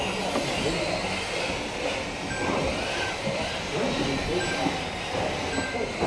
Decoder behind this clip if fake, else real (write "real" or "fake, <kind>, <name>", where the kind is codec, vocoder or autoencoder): real